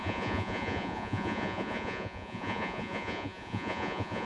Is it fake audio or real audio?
fake